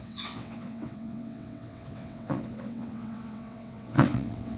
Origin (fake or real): fake